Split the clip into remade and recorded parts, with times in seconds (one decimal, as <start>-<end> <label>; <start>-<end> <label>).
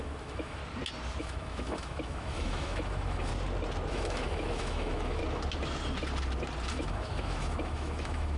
0.0-0.6 remade; 0.6-1.2 recorded; 1.2-3.3 remade; 3.3-3.9 recorded; 3.9-5.2 remade; 5.2-6.7 recorded; 6.7-8.4 remade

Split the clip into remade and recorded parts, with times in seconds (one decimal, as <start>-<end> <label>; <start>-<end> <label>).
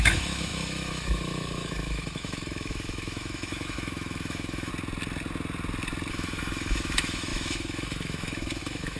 0.0-4.7 remade; 4.7-6.1 recorded; 6.1-9.0 remade